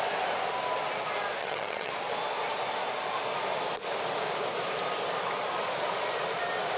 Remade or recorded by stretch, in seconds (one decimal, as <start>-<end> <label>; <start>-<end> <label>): 0.0-1.4 recorded; 1.4-1.9 remade; 1.9-6.8 recorded